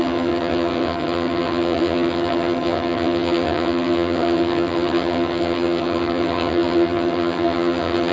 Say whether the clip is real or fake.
fake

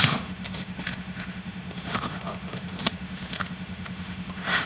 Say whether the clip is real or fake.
fake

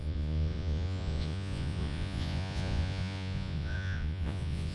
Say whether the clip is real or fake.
fake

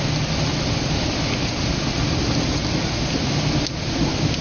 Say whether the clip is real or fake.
real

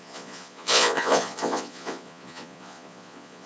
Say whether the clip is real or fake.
fake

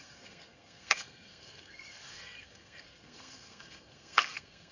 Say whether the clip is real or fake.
fake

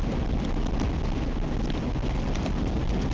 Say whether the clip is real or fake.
real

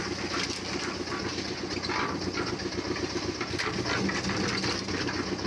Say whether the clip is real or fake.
real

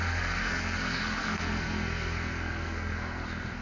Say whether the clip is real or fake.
fake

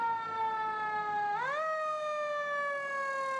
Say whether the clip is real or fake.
real